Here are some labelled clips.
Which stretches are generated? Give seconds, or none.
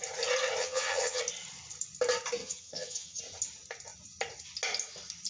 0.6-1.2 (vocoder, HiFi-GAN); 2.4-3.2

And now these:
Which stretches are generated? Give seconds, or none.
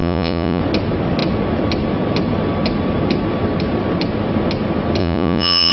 0.0-0.6 (vocoder, Vocos); 5.0-5.7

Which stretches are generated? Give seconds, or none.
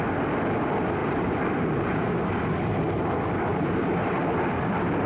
1.0-2.1 (vocoder, BigVGAN v2); 3.5-4.2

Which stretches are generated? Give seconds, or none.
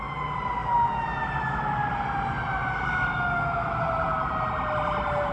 3.1-3.8 (autoencoder, DAC-VAE)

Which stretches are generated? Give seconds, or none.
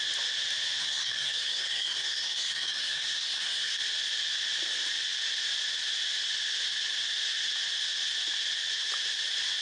0.8-3.8 (codec, SNAC)